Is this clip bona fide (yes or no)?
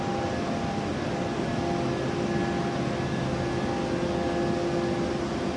yes